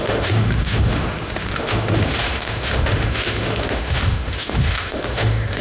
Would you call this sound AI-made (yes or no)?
yes